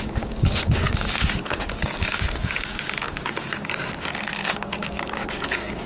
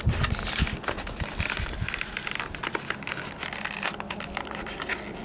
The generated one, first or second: first